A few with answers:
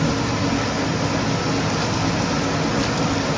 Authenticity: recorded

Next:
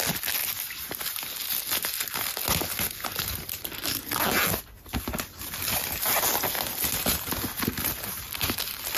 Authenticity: recorded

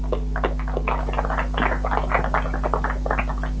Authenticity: recorded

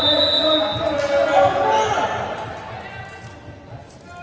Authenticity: recorded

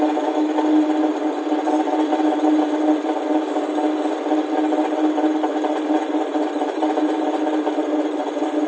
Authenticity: recorded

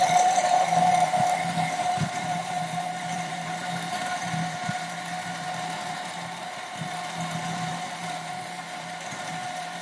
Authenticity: remade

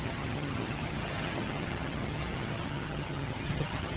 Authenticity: remade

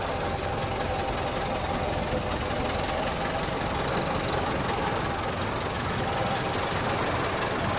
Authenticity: recorded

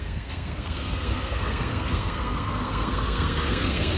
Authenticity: remade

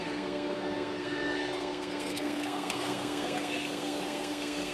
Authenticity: remade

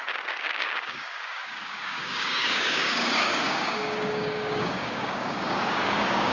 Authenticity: remade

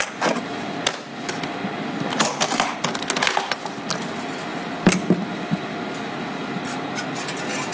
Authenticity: recorded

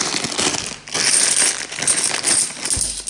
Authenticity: recorded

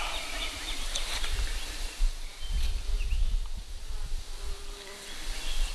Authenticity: recorded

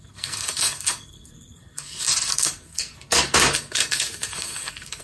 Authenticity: remade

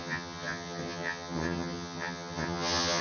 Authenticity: remade